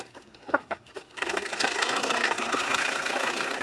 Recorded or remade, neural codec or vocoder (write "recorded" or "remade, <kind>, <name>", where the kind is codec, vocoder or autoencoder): remade, codec, SNAC